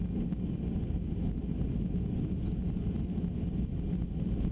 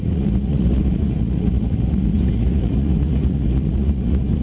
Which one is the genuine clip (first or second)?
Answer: first